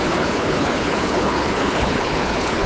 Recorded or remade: remade